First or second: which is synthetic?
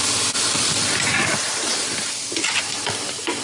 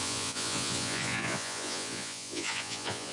second